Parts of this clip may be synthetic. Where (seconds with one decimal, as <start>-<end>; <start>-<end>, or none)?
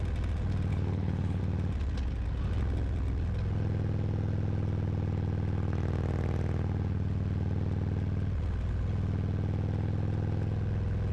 0.7-1.4